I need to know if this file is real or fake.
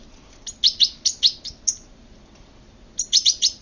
real